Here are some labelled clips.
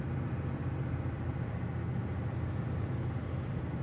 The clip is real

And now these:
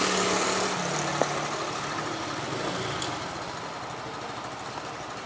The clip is real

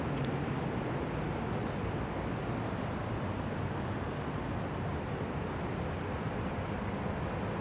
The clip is real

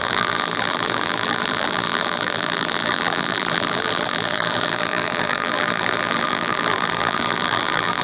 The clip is fake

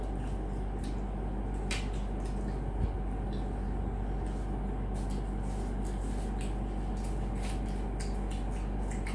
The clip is real